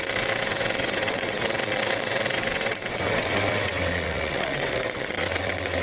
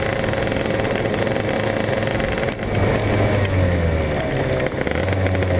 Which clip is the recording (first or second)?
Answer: second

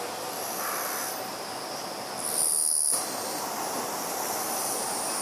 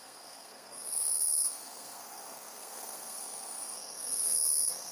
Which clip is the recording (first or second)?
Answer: first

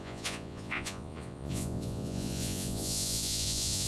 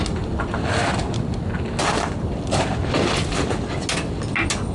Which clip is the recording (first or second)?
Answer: second